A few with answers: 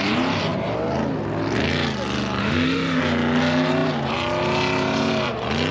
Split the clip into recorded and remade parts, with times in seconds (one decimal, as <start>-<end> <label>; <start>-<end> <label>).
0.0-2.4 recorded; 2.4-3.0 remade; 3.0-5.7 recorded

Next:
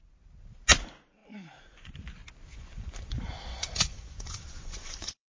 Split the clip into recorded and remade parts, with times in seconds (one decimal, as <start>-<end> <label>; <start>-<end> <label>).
0.0-1.2 recorded; 1.2-1.9 remade; 1.9-2.5 recorded; 2.5-3.1 remade; 3.1-3.5 recorded; 3.5-5.4 remade

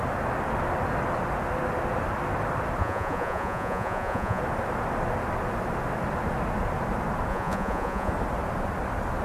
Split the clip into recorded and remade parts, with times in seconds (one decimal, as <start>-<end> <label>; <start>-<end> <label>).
0.0-2.8 recorded; 2.8-4.4 remade; 4.4-7.3 recorded; 7.3-8.1 remade; 8.1-9.2 recorded

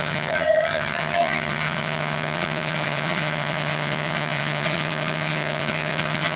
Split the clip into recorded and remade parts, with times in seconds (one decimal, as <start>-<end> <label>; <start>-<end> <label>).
0.0-6.4 remade

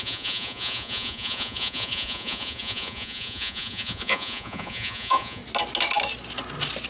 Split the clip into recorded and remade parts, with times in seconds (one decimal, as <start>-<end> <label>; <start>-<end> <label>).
0.0-5.4 remade; 5.4-6.9 recorded

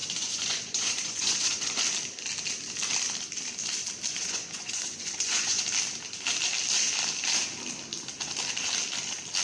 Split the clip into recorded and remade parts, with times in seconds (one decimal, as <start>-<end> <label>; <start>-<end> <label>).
0.0-1.8 remade; 1.8-4.1 recorded; 4.1-5.6 remade; 5.6-9.4 recorded

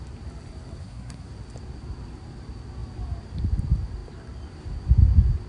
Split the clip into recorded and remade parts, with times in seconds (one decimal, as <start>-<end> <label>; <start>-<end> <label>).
0.0-0.8 recorded; 0.8-1.3 remade; 1.3-5.5 recorded